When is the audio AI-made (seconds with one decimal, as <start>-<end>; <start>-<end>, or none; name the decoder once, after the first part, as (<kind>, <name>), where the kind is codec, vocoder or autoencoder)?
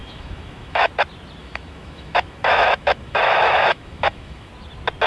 0.0-0.9 (autoencoder, DAC-VAE); 1.4-4.5